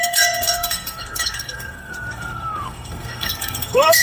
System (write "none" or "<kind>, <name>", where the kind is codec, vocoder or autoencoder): codec, SNAC